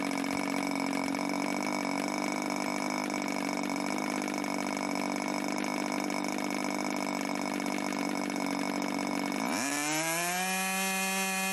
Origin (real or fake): real